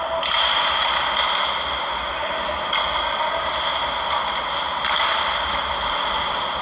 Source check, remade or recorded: recorded